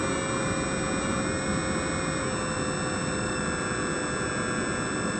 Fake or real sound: real